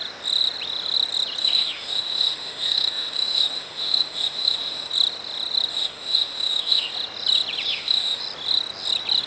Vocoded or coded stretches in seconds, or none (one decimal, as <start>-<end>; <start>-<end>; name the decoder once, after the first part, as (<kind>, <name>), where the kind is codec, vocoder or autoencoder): 1.4-4.9 (autoencoder, DAC-VAE); 5.7-6.9; 7.7-8.2